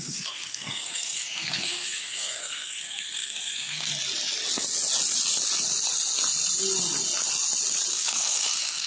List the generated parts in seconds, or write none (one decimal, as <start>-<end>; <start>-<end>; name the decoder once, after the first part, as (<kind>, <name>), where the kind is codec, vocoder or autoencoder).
0.0-3.9 (codec, SNAC); 7.9-8.9